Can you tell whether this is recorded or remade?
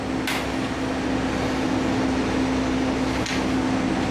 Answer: recorded